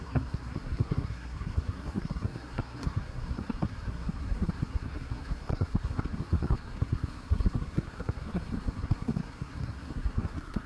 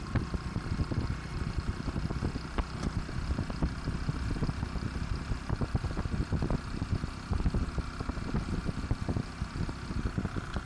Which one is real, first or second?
second